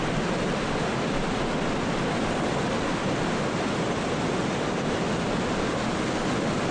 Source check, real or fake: real